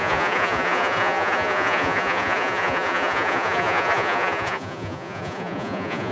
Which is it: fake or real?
fake